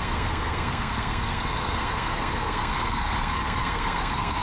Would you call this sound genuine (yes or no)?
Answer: no